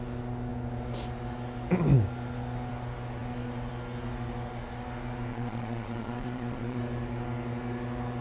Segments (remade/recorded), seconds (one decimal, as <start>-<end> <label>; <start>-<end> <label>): 0.0-5.3 recorded; 5.3-6.8 remade; 6.8-8.2 recorded